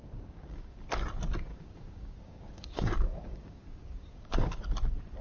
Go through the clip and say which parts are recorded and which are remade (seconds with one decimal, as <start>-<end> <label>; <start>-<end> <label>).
0.0-0.9 remade; 0.9-1.5 recorded; 1.5-4.6 remade; 4.6-5.2 recorded